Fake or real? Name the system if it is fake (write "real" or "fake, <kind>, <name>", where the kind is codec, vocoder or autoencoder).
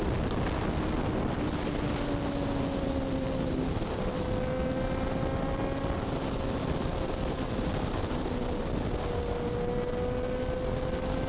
real